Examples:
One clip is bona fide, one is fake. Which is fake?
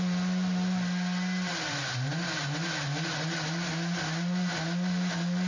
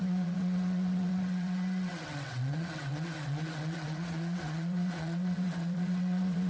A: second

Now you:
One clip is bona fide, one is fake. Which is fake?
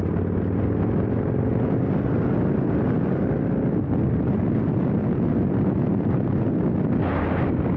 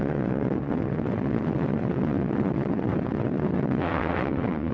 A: second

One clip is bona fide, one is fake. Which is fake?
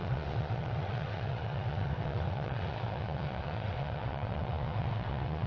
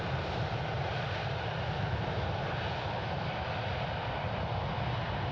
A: first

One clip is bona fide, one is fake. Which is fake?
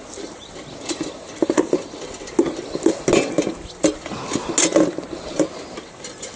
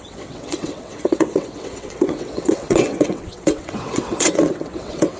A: second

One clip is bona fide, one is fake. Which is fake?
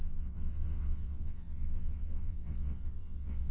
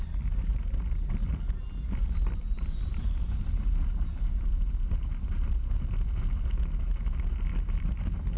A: first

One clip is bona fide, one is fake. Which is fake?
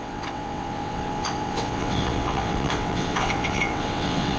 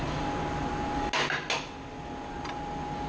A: first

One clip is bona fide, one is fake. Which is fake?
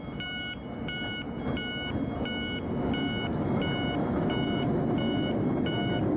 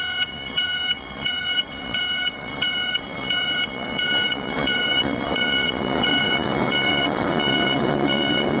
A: second